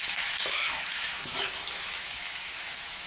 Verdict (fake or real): fake